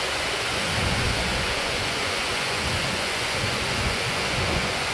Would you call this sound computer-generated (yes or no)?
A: yes